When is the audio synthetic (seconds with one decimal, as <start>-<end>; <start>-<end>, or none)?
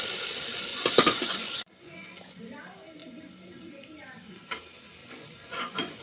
0.7-2.4; 5.0-6.0